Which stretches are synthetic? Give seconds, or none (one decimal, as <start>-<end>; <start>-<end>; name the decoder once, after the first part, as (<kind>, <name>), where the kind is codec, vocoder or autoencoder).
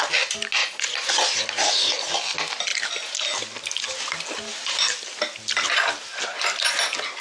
0.6-1.1 (vocoder, Vocos)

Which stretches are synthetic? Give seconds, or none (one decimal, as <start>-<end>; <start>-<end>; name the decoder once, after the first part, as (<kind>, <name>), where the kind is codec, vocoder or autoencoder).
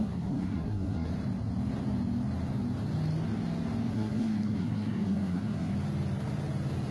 0.0-1.1 (codec, SNAC); 3.9-5.7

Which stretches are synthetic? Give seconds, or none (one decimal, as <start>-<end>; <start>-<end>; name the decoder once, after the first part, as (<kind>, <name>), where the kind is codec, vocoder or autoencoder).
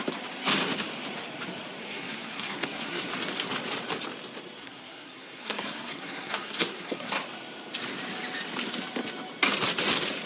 1.8-3.1 (codec, SNAC); 4.6-7.1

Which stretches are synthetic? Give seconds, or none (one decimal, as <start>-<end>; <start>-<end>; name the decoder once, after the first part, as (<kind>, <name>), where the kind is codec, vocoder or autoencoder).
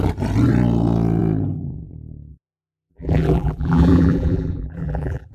2.3-5.3 (vocoder, BigVGAN v2)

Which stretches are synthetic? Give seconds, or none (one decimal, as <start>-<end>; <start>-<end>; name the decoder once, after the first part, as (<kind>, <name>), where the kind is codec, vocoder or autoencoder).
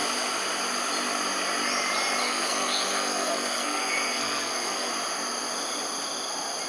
2.2-4.9 (codec, SNAC)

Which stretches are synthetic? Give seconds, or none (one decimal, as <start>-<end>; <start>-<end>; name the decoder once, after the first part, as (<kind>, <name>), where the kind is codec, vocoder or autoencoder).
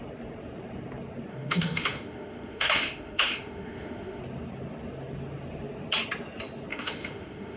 1.3-4.2 (autoencoder, DAC-VAE); 6.7-7.6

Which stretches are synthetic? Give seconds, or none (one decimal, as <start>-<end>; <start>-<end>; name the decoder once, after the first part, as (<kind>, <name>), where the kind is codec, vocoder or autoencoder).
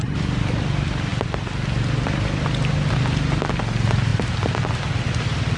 none